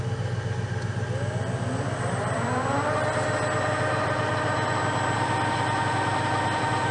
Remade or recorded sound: recorded